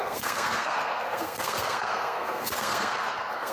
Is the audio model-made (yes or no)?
yes